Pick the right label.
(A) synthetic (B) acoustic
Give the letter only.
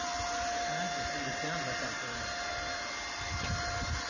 B